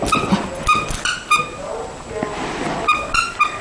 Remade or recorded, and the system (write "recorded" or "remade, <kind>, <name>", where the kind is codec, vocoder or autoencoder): recorded